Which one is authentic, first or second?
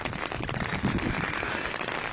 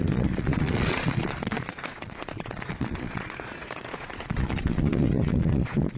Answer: first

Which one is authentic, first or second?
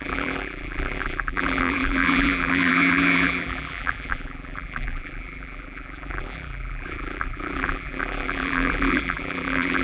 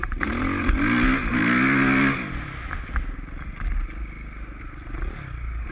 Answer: second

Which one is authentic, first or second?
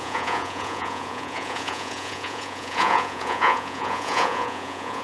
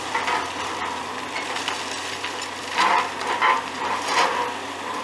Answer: second